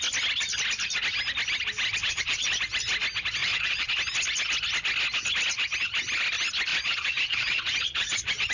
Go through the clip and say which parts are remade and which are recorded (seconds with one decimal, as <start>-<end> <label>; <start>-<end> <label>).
0.0-2.0 recorded; 2.0-2.5 remade; 2.5-3.4 recorded; 3.4-3.9 remade; 3.9-6.7 recorded; 6.7-8.5 remade

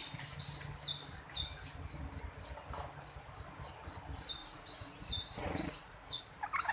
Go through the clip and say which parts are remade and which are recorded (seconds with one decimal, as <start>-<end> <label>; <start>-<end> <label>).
0.0-4.4 recorded; 4.4-6.2 remade; 6.2-6.7 recorded